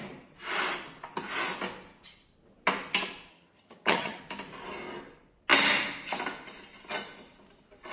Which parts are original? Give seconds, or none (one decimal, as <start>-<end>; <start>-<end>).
0.0-3.3; 4.2-7.9